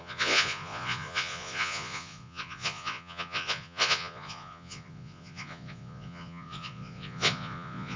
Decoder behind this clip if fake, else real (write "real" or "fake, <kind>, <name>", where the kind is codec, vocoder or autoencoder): fake, vocoder, Vocos